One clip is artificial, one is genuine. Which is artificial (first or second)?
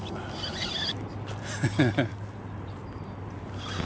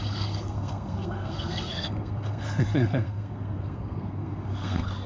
second